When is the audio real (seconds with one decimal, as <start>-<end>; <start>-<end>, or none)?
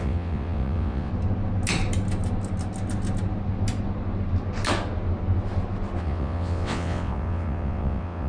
1.1-6.0